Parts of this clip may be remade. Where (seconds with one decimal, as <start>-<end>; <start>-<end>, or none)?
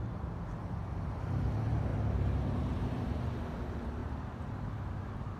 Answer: 1.9-2.7; 4.0-5.4